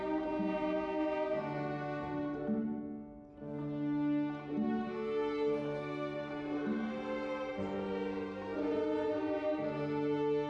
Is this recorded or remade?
recorded